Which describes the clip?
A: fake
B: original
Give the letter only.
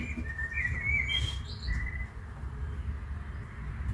B